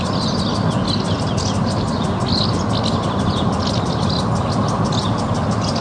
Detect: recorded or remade recorded